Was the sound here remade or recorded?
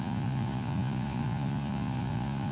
remade